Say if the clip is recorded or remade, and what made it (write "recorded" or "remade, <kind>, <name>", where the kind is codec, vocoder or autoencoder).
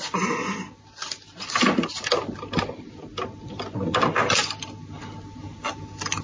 recorded